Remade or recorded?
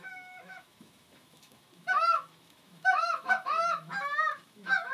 remade